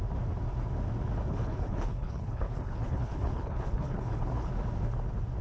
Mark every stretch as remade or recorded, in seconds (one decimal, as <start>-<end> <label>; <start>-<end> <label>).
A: 0.0-1.3 recorded; 1.3-4.5 remade; 4.5-5.4 recorded